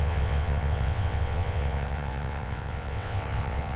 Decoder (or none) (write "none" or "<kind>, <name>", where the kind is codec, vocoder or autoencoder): vocoder, WaveNeXt